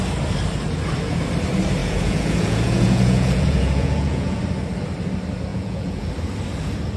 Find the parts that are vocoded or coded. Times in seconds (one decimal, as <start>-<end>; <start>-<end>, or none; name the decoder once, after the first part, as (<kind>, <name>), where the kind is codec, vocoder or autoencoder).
1.8-4.4 (vocoder, Vocos); 5.5-6.1